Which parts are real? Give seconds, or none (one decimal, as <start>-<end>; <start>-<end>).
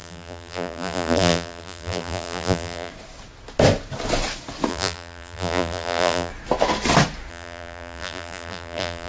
2.9-4.7; 6.3-7.3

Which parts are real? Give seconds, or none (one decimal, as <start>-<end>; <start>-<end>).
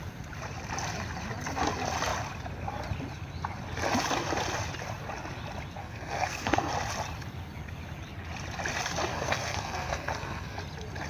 0.0-5.8; 6.7-9.1; 10.6-11.1